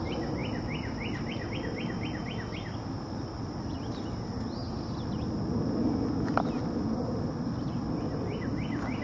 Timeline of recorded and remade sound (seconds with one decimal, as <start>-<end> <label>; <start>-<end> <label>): 0.0-9.0 recorded